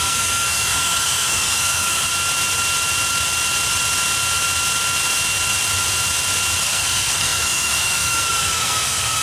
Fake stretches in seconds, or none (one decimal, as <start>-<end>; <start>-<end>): 0.0-2.1; 6.6-9.2